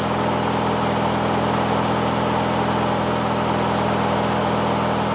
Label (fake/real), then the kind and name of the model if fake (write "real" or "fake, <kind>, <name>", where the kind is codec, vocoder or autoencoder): real